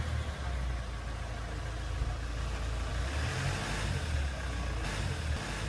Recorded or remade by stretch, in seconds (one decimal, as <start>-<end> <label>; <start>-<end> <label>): 0.0-5.7 recorded